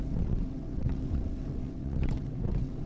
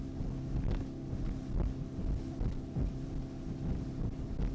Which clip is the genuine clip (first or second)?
second